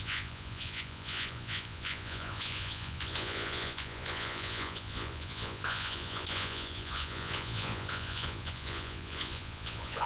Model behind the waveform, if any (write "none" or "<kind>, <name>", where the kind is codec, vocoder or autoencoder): vocoder, Vocos